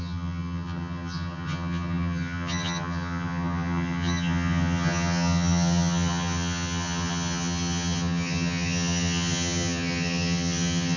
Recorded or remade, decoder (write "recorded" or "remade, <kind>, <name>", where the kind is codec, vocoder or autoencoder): remade, vocoder, HiFi-GAN